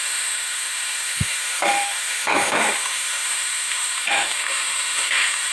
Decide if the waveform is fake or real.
fake